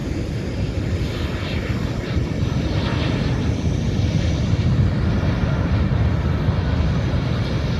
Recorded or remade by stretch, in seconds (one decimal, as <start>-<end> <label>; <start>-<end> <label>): 0.0-7.8 recorded